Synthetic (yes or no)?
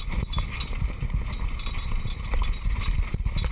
no